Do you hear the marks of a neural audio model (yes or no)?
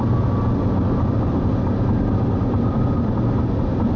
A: no